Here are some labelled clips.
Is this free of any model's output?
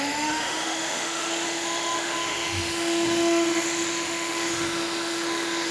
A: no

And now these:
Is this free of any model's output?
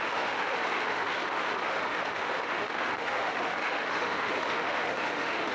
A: no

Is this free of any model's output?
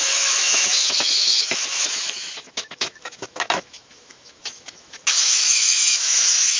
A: no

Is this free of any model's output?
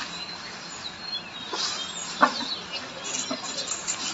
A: yes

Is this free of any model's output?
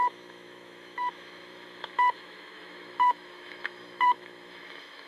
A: no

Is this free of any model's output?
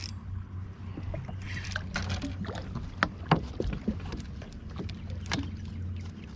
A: yes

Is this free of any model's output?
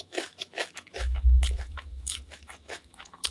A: no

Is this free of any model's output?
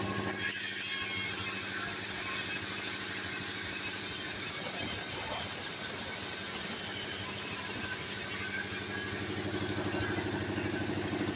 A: yes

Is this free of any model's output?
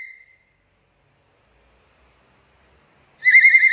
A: yes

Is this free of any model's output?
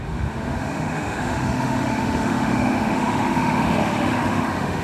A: no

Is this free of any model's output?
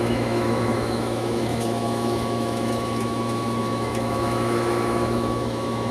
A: no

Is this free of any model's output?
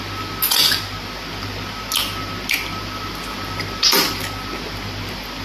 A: yes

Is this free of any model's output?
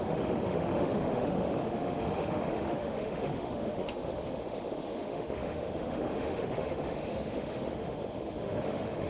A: no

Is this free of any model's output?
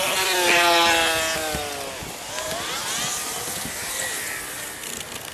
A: yes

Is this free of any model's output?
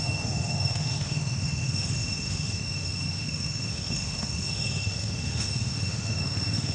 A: no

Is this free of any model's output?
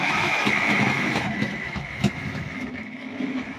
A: no